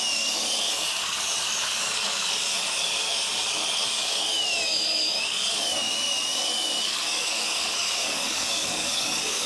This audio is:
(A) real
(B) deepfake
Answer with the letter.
B